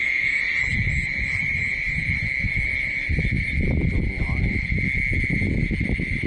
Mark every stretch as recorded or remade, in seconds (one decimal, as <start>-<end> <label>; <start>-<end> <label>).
0.0-6.3 recorded